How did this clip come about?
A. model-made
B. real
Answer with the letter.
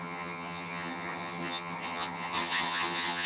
A